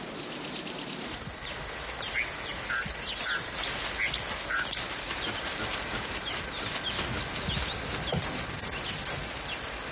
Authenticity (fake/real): real